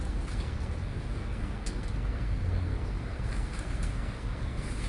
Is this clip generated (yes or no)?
yes